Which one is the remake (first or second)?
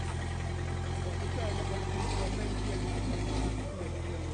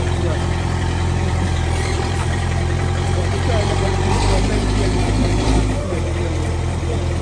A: second